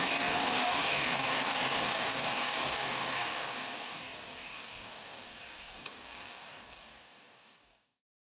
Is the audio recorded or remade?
remade